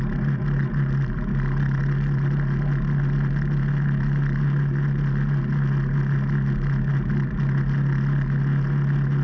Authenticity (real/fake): real